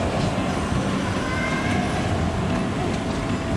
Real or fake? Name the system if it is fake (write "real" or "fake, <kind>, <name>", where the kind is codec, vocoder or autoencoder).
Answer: real